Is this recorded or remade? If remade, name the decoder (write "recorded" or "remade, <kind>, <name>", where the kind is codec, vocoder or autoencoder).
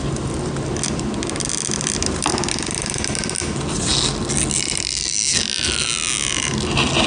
recorded